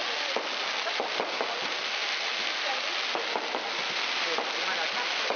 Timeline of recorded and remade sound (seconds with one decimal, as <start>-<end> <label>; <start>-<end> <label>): 0.0-5.4 recorded